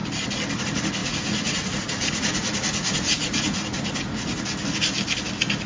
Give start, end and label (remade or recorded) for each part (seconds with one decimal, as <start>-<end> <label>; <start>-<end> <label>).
0.0-1.0 recorded; 1.0-4.4 remade; 4.4-5.7 recorded

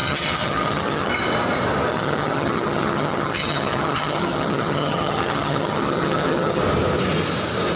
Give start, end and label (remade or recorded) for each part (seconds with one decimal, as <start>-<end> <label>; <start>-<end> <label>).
0.0-1.1 remade; 1.1-1.9 recorded; 1.9-6.6 remade; 6.6-7.8 recorded

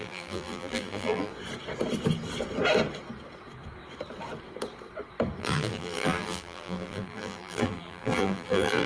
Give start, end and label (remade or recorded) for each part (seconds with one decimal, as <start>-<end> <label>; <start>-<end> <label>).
0.0-1.3 remade; 1.3-5.4 recorded; 5.4-8.9 remade

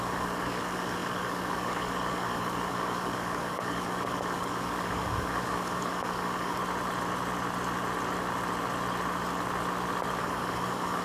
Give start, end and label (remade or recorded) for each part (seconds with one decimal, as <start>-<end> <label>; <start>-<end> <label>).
0.0-6.6 remade; 6.6-10.2 recorded; 10.2-11.0 remade

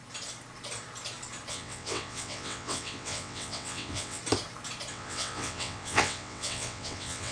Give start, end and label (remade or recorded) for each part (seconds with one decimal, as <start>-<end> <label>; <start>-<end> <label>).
0.0-1.5 recorded; 1.5-4.2 remade; 4.2-4.9 recorded; 4.9-7.3 remade